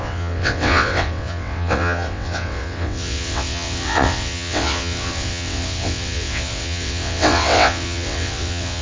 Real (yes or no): no